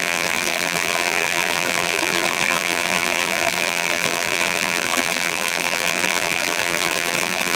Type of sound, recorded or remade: remade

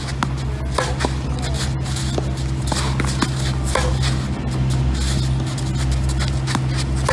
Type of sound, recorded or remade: recorded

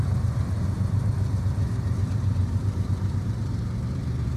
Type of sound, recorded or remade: remade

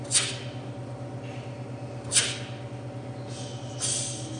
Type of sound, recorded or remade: recorded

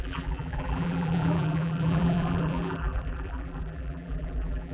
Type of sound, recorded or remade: remade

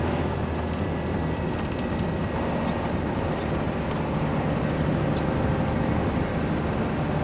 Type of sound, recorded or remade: recorded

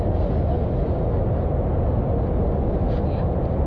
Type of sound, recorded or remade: recorded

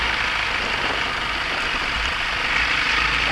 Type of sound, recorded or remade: recorded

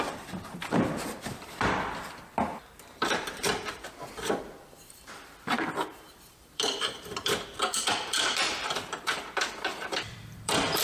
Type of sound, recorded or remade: remade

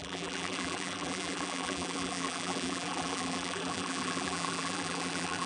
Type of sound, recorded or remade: remade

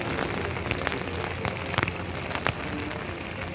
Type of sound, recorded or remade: recorded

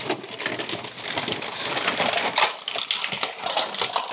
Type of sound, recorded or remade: remade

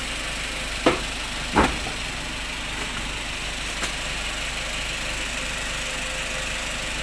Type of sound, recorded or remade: recorded